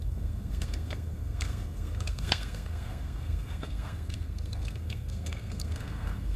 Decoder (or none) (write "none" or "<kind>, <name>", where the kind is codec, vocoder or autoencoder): codec, SNAC